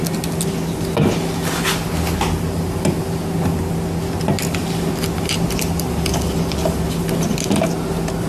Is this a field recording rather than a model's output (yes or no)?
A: yes